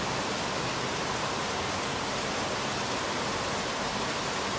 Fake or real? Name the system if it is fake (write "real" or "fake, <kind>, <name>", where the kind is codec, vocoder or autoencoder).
real